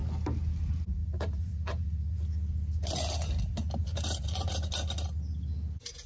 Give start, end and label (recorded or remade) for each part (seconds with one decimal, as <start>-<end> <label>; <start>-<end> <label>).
0.0-1.0 recorded; 1.0-2.2 remade; 2.2-3.8 recorded; 3.8-4.5 remade; 4.5-6.1 recorded